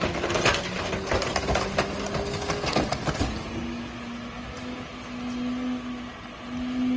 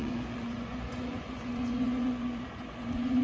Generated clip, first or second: second